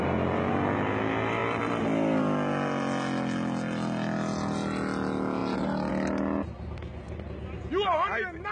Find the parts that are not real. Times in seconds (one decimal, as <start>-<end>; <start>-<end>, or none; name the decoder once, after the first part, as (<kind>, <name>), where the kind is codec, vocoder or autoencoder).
1.4-2.2 (vocoder, BigVGAN v2)

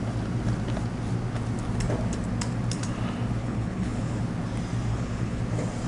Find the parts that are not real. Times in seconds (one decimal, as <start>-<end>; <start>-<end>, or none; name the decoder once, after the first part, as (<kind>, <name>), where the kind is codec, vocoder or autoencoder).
3.4-4.2 (codec, HILCodec); 4.9-5.4